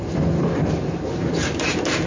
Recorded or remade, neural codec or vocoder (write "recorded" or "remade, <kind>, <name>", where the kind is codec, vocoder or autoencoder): recorded